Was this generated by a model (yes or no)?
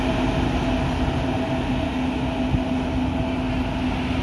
no